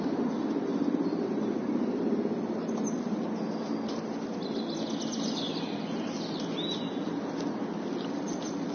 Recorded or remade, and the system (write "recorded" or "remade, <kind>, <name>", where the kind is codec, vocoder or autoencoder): recorded